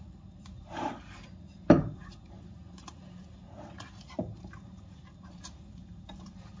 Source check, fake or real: fake